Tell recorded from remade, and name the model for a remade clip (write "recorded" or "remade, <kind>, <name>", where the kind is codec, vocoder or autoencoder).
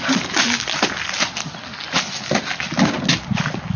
recorded